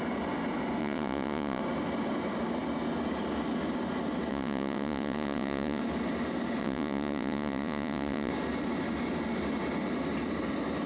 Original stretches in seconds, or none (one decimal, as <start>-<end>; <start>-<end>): 0.0-0.8; 1.6-4.3; 5.8-6.6; 8.3-10.9